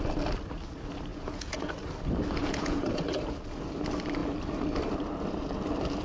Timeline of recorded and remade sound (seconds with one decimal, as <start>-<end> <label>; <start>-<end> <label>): 0.0-1.1 recorded; 1.1-1.7 remade; 1.7-2.4 recorded; 2.4-3.0 remade; 3.0-6.0 recorded